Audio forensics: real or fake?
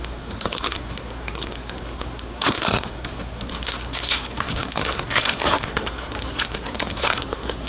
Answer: fake